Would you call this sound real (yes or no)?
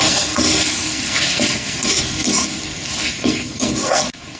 no